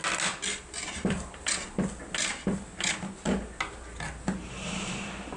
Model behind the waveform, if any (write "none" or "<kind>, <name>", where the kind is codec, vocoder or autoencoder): none